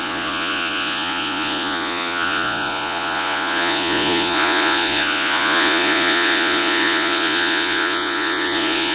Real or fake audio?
fake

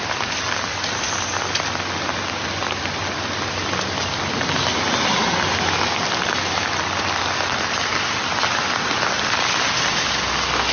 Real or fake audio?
real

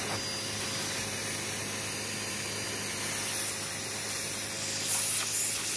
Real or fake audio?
real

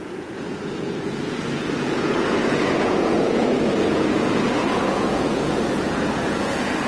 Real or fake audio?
fake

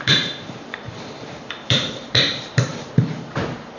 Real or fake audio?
fake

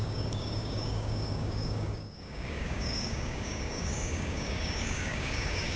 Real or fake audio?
fake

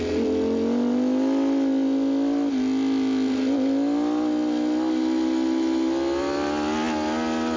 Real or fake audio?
real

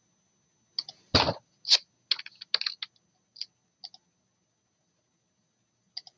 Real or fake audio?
real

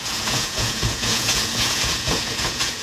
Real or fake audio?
fake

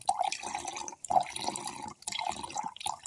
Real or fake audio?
real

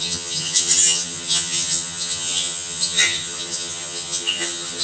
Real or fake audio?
fake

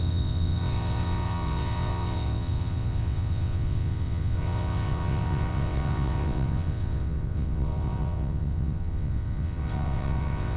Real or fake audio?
fake